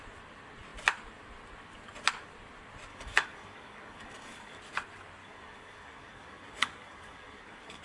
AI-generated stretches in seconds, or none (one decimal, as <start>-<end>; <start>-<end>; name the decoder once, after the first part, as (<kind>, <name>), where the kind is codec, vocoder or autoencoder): 2.9-4.6 (codec, DAC); 5.2-7.8